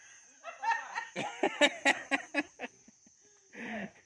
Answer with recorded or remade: recorded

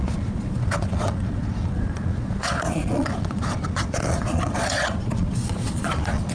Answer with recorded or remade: remade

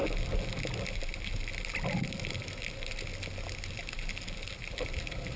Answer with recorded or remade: recorded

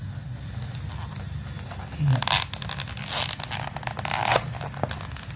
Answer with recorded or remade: recorded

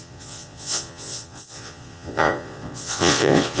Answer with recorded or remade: remade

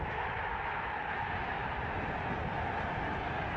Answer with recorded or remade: recorded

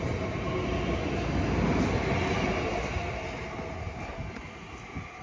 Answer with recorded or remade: recorded